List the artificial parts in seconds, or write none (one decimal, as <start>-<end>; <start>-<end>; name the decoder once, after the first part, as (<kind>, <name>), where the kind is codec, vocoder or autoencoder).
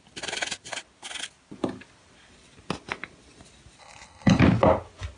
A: 3.8-4.4 (codec, HILCodec)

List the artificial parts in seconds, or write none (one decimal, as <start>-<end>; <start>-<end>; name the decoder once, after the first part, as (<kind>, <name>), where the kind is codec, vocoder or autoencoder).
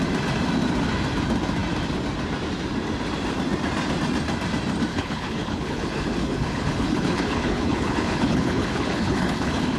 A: 4.9-9.8 (codec, HILCodec)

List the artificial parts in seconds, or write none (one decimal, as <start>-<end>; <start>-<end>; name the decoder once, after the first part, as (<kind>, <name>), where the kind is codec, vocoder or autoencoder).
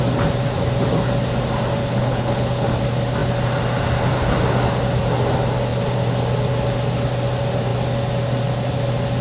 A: 1.8-2.7 (codec, HILCodec)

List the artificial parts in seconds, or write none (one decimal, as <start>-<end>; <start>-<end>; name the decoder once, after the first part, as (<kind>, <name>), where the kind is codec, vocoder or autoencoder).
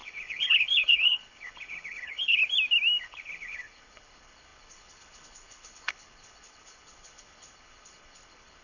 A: 0.0-2.4 (codec, HILCodec); 3.0-8.6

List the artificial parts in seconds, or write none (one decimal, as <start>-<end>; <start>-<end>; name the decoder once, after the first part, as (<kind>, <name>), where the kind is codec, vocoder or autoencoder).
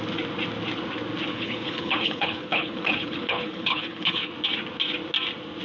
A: 1.3-4.3 (codec, HILCodec)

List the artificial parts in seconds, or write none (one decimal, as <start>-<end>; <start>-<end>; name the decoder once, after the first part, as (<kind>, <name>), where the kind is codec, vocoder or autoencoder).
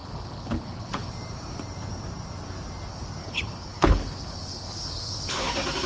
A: 0.0-1.1 (codec, HILCodec); 3.2-5.5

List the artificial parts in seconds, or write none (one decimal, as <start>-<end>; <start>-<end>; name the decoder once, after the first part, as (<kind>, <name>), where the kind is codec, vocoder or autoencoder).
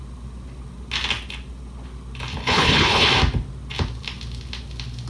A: 2.4-3.1 (codec, HILCodec)